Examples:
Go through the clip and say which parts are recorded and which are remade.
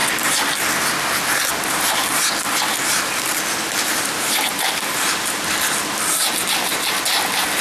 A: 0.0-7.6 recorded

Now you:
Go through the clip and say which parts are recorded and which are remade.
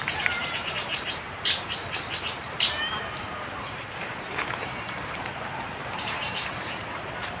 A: 0.0-7.4 remade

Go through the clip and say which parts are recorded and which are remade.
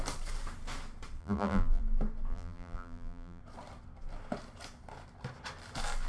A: 0.0-1.2 recorded; 1.2-1.8 remade; 1.8-2.3 recorded; 2.3-3.4 remade; 3.4-6.1 recorded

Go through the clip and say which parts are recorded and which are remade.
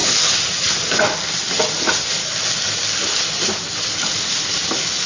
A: 0.0-5.1 recorded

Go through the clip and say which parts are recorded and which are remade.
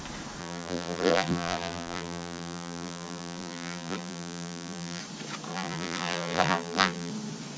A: 0.0-0.4 recorded; 0.4-5.0 remade; 5.0-5.5 recorded; 5.5-7.1 remade; 7.1-7.6 recorded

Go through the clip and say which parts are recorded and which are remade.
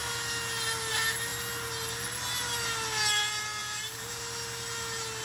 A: 0.0-3.6 recorded; 3.6-4.2 remade; 4.2-5.2 recorded